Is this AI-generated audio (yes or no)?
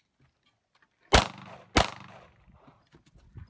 no